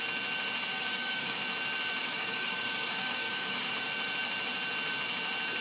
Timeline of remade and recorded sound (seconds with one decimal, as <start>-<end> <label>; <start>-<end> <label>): 0.0-0.7 recorded; 0.7-1.4 remade; 1.4-2.0 recorded; 2.0-3.7 remade; 3.7-5.6 recorded